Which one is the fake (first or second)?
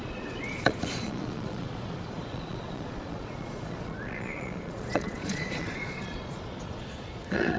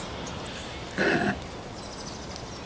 first